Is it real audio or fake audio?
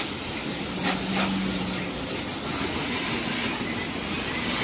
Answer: real